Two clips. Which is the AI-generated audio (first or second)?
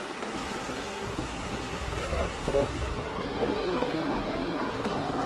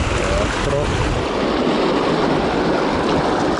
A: first